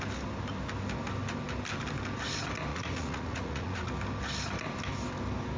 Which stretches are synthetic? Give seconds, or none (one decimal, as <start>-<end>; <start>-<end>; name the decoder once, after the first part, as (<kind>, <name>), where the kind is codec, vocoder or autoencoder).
2.7-3.9 (vocoder, Vocos)